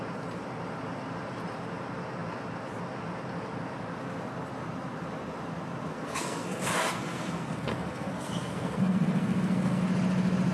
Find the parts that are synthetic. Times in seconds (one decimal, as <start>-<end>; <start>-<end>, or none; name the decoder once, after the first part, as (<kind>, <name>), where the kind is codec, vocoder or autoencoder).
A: 5.9-9.8 (codec, SNAC)

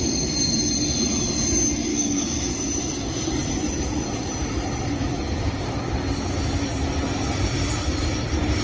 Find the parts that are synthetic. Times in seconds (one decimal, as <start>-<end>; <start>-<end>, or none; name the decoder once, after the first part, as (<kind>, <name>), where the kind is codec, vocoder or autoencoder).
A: 1.9-2.5 (codec, DAC)